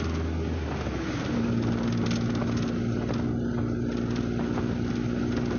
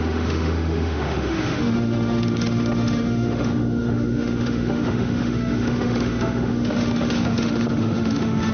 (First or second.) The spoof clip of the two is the second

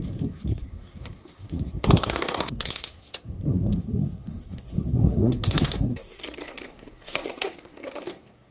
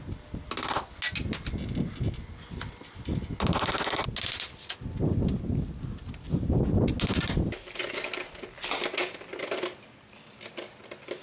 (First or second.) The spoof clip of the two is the first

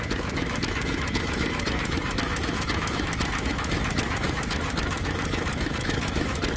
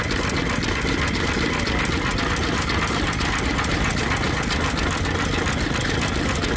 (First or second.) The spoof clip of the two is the first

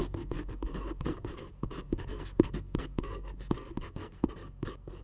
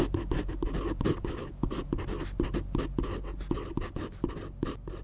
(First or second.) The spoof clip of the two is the first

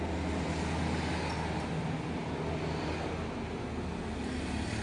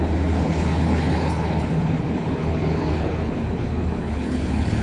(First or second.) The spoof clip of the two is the second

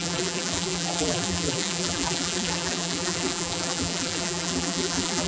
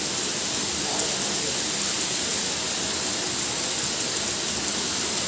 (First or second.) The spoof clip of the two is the first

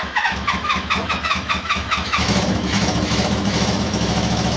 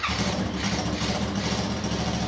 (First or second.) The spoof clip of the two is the first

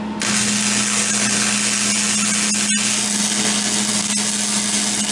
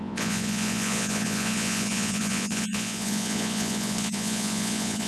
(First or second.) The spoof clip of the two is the second